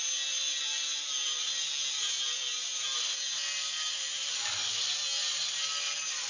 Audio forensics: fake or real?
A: real